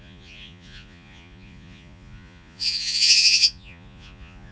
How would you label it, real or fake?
fake